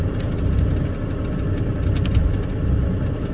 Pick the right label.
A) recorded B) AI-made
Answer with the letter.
A